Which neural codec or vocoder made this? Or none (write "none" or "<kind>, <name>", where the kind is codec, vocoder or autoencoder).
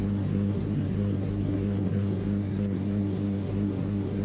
codec, SNAC